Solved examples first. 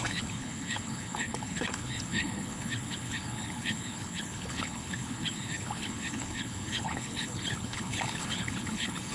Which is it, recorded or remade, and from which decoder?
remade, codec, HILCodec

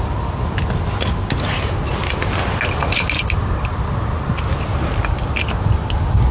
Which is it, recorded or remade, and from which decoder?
recorded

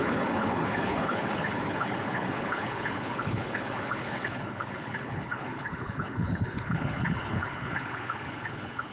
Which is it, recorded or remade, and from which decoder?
remade, codec, HILCodec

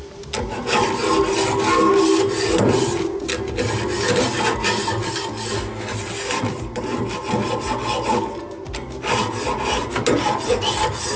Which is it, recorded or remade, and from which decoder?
recorded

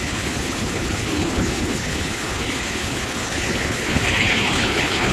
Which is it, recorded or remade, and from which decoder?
remade, codec, HILCodec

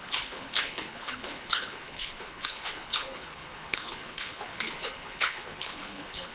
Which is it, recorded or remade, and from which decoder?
remade, codec, HILCodec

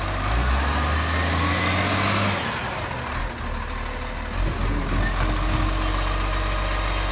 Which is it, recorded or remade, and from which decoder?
recorded